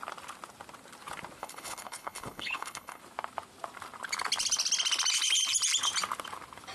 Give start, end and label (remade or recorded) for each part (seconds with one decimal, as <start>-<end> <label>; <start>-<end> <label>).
0.0-1.4 recorded; 1.4-3.0 remade; 3.0-6.7 recorded